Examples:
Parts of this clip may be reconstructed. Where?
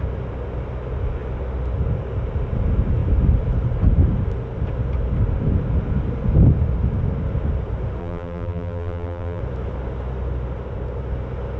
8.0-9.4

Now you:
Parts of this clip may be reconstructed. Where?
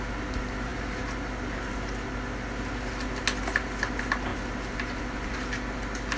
none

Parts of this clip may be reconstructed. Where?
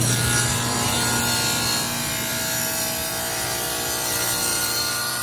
0.5-1.2; 4.5-5.2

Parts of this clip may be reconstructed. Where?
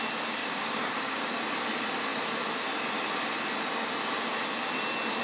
0.4-1.4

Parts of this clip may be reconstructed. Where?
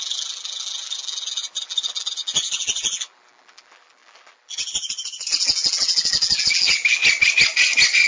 0.0-7.0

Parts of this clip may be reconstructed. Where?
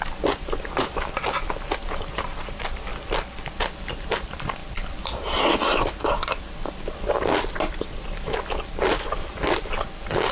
0.0-4.6; 8.6-10.3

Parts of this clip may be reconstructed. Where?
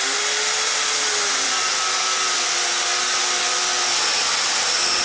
none